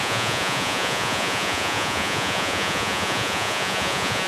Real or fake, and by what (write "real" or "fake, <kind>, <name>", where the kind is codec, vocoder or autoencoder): fake, vocoder, Vocos